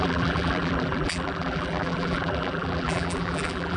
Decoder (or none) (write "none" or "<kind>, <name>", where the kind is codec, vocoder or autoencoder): vocoder, BigVGAN v2